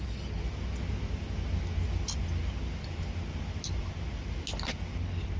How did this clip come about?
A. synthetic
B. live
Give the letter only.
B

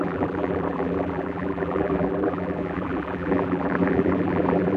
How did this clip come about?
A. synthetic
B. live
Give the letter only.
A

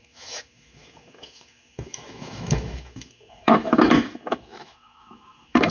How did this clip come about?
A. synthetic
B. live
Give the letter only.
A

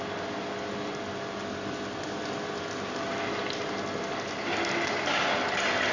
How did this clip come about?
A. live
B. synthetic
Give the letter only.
A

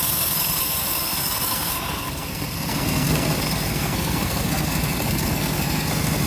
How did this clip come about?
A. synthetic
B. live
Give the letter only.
A